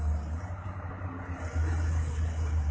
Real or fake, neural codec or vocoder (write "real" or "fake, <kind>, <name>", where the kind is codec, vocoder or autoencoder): real